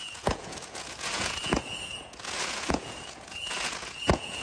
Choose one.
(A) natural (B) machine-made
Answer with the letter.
B